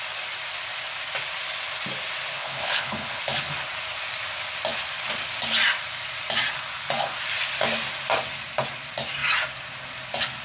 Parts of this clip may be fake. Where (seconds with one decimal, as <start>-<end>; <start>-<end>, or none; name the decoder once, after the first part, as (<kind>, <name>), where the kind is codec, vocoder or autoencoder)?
2.3-3.2 (codec, HILCodec)